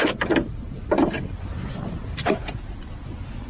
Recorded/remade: remade